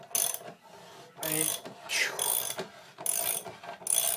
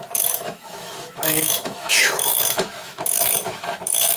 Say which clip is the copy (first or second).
second